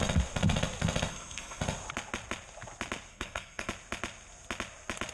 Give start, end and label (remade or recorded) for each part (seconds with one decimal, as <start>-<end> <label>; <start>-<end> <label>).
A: 0.0-1.1 recorded; 1.1-1.6 remade; 1.6-3.1 recorded; 3.1-3.7 remade; 3.7-5.1 recorded